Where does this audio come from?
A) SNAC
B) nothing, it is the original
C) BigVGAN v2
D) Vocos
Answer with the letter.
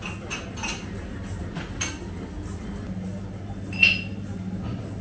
B